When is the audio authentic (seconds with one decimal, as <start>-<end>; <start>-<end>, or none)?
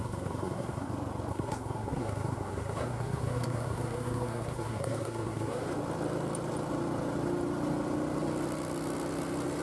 0.9-1.3; 5.6-9.6